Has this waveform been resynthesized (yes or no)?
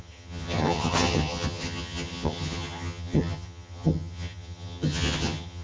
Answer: yes